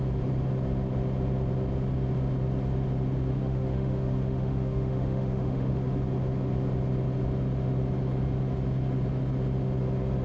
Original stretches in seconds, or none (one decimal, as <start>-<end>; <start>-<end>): 0.0-3.3; 5.7-10.2